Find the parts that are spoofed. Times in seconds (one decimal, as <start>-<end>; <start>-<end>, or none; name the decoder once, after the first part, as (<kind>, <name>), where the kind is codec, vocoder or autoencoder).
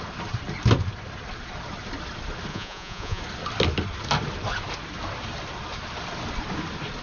2.5-3.2 (vocoder, Vocos)